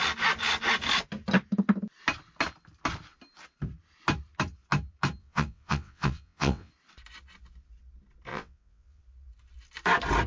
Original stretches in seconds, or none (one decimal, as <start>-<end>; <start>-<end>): 0.0-5.2; 6.7-8.3; 9.0-10.3